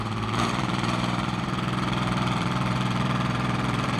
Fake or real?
fake